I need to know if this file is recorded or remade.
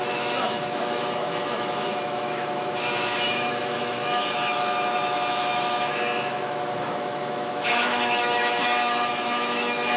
remade